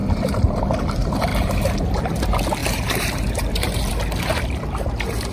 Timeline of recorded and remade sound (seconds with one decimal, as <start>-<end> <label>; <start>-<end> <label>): 0.0-0.6 remade; 0.6-1.3 recorded; 1.3-2.0 remade; 2.0-2.6 recorded; 2.6-3.9 remade; 3.9-5.3 recorded